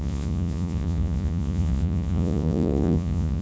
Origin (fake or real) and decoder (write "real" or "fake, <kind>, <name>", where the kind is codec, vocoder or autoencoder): fake, vocoder, Vocos